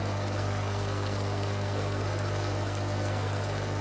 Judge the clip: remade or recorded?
remade